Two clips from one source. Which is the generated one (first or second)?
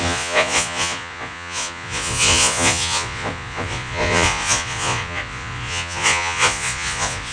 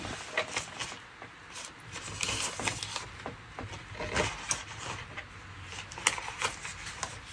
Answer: first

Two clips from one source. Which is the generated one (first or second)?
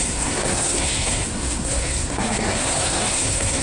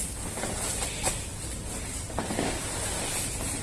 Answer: first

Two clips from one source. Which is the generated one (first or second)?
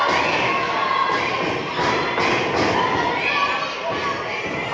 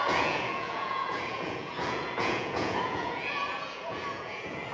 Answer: second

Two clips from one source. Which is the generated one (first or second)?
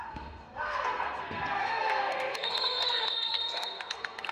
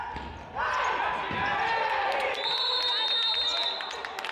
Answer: first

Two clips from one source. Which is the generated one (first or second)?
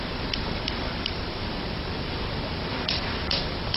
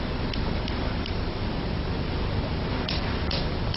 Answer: first